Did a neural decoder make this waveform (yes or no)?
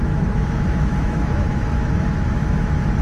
yes